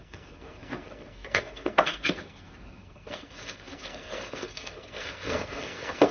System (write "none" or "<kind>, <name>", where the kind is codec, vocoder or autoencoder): codec, SNAC